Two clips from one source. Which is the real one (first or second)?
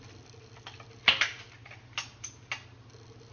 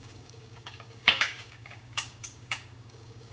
first